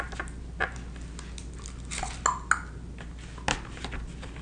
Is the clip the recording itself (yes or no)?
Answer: yes